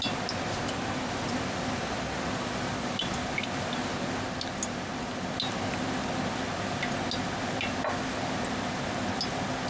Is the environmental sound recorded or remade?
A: recorded